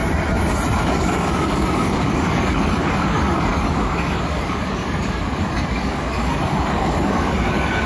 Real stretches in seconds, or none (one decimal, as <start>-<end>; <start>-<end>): 0.0-0.8